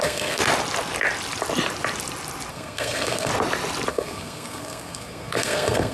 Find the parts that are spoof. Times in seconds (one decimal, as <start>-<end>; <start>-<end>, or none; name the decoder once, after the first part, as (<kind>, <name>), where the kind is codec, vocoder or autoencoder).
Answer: 0.0-0.4 (codec, SNAC); 2.5-3.3; 3.9-5.9